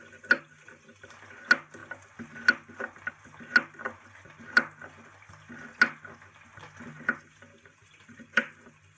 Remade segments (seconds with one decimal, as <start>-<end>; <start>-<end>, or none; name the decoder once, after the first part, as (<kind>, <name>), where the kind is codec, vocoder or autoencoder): none